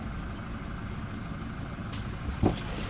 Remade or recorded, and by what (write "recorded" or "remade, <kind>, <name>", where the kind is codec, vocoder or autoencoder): recorded